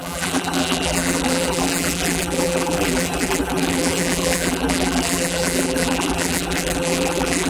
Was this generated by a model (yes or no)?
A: yes